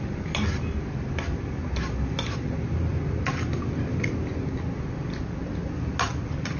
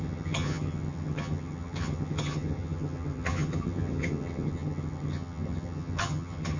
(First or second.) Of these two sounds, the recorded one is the first